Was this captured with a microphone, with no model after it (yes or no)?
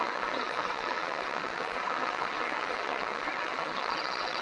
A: no